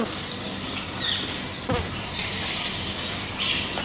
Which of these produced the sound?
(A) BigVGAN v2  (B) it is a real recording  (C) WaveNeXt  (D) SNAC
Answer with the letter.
B